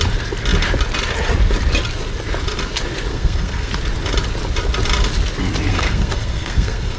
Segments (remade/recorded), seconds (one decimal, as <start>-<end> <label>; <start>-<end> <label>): 0.0-3.1 recorded; 3.1-3.7 remade; 3.7-5.7 recorded; 5.7-7.0 remade